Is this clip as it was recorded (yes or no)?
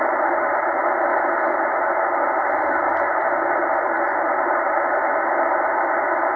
yes